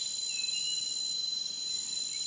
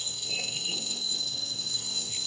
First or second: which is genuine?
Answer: first